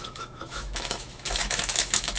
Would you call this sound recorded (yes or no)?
no